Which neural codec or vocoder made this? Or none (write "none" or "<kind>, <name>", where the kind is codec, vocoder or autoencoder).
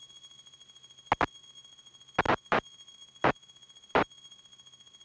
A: none